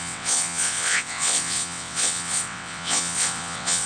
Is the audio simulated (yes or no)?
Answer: yes